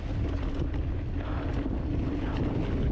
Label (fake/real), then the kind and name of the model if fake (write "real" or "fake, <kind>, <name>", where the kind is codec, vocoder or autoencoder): real